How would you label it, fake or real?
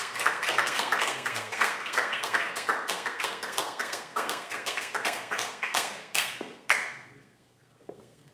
fake